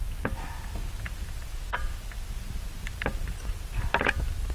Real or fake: real